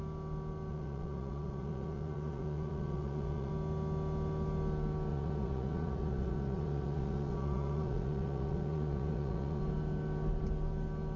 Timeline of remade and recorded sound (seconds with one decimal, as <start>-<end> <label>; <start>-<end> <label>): 0.0-0.7 recorded; 0.7-3.5 remade; 3.5-5.1 recorded; 5.1-9.6 remade; 9.6-11.2 recorded